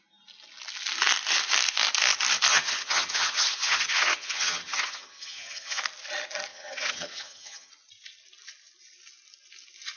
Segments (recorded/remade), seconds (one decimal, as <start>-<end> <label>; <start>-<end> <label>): 0.0-2.5 recorded; 2.5-5.8 remade; 5.8-6.5 recorded; 6.5-7.7 remade; 7.7-10.0 recorded